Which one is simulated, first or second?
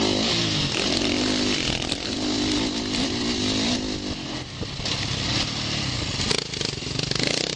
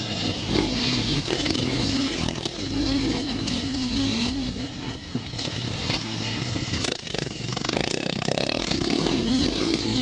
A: second